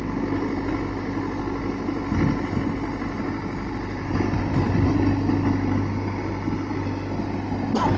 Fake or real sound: real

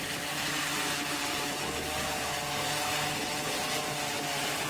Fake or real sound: real